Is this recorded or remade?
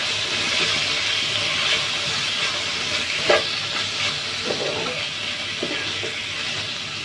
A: recorded